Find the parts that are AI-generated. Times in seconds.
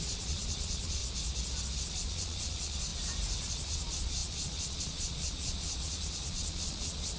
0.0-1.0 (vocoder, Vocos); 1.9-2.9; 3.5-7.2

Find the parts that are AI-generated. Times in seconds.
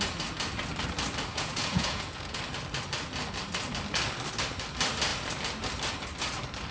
1.3-2.4 (vocoder, Vocos)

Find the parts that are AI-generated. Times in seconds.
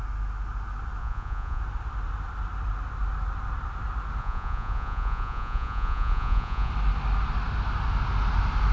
1.0-1.6 (vocoder, Vocos); 4.2-6.7